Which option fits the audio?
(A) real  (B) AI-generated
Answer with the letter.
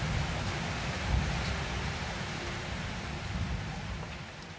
B